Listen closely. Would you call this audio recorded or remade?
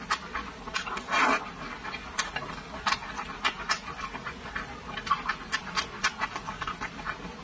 recorded